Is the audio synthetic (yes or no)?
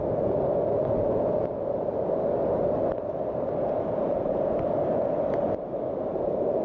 no